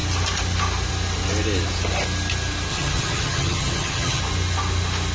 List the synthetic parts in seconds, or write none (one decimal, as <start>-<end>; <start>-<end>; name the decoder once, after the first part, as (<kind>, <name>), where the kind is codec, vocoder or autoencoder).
2.7-4.2 (vocoder, HiFi-GAN)